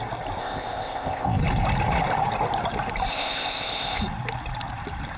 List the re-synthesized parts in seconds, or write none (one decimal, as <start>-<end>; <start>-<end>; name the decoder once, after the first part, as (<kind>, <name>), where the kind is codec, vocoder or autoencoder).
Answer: 0.4-1.4 (codec, ZipCodec); 3.1-4.0